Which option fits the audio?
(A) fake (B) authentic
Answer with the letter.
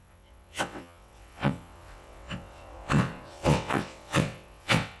A